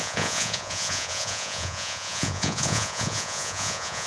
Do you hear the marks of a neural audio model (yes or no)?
yes